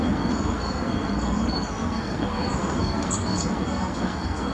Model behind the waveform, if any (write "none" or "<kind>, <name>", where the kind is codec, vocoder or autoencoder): codec, SNAC